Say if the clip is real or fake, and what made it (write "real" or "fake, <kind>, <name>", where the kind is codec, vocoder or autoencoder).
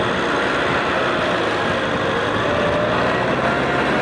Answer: real